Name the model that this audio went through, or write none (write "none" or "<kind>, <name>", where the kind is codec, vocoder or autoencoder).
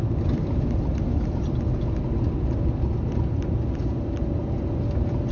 none